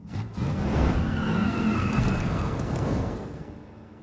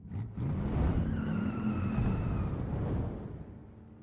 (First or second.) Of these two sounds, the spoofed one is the first